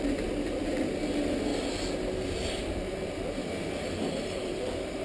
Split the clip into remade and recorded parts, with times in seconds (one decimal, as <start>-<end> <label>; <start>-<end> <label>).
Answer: 0.0-1.5 remade; 1.5-2.2 recorded; 2.2-3.4 remade; 3.4-4.2 recorded; 4.2-5.0 remade